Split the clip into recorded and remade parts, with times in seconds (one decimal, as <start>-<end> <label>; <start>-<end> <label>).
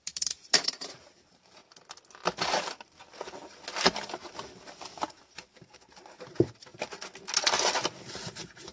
0.0-1.6 remade; 1.6-4.7 recorded; 4.7-6.7 remade; 6.7-8.0 recorded; 8.0-8.7 remade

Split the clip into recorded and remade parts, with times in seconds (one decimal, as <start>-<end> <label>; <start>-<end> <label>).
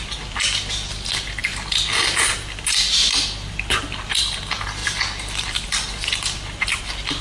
0.0-4.8 recorded; 4.8-6.8 remade; 6.8-7.2 recorded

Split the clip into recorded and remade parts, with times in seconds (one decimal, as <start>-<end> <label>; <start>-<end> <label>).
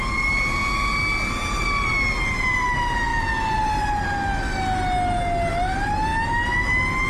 0.0-7.1 recorded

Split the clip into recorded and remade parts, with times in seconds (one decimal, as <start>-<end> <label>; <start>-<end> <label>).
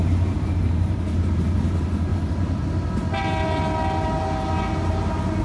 0.0-0.6 recorded; 0.6-2.1 remade; 2.1-5.4 recorded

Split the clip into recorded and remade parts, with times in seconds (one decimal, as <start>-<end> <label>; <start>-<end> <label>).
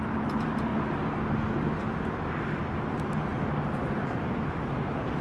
0.0-0.7 remade; 0.7-2.9 recorded; 2.9-3.3 remade; 3.3-4.0 recorded; 4.0-5.2 remade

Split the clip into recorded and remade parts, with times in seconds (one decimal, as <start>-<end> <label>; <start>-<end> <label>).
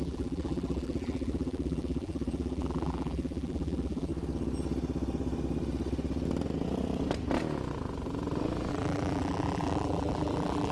0.0-4.1 remade; 4.1-8.7 recorded; 8.7-10.7 remade